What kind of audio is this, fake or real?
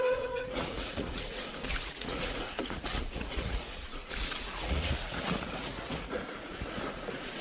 fake